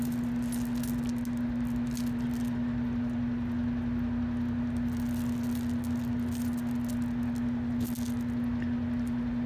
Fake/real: real